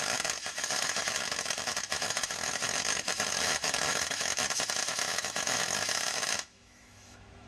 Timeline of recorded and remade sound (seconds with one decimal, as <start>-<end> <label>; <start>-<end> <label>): 0.0-7.5 remade